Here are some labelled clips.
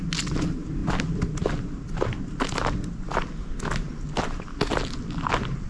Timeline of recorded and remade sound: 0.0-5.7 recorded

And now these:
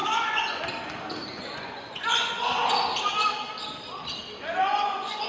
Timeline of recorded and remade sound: 0.0-0.6 remade; 0.6-1.3 recorded; 1.3-2.6 remade; 2.6-4.6 recorded; 4.6-5.3 remade

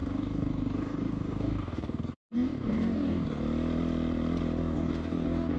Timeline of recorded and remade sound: 0.0-3.4 remade; 3.4-4.6 recorded; 4.6-5.6 remade

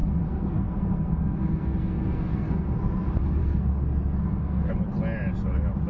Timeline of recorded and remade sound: 0.0-2.8 remade; 2.8-3.4 recorded; 3.4-4.7 remade; 4.7-5.9 recorded

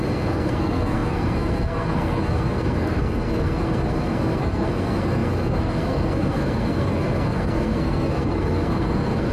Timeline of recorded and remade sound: 0.0-9.3 remade